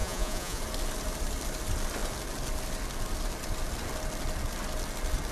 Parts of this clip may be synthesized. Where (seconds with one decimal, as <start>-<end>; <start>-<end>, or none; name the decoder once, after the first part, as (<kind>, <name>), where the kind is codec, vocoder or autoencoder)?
0.0-0.6 (vocoder, Vocos)